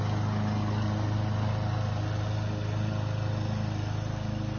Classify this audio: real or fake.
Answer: real